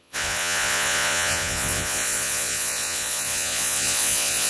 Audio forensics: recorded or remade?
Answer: remade